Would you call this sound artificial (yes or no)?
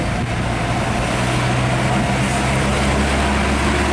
no